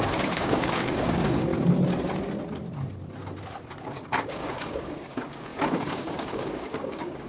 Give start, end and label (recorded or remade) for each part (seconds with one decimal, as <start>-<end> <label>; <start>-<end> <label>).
0.0-1.5 remade; 1.5-3.8 recorded; 3.8-7.3 remade